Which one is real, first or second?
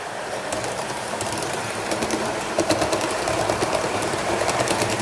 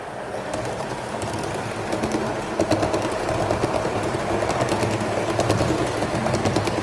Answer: second